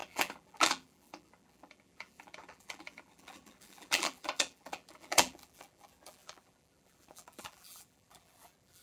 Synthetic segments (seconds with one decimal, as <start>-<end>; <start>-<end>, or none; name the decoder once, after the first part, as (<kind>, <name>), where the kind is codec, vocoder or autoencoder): 0.0-8.8 (vocoder, BigVGAN v2)

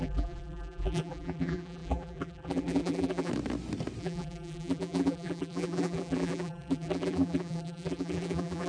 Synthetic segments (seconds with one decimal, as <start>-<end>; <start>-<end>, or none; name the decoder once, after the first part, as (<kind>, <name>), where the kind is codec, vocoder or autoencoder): 0.0-3.3 (vocoder, BigVGAN v2); 4.0-8.7